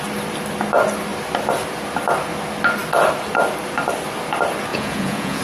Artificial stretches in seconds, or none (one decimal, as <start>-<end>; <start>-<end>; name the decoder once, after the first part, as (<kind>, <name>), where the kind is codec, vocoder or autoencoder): 4.7-5.4 (vocoder, Vocos)